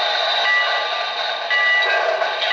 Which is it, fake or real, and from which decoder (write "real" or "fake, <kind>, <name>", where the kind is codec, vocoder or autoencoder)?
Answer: real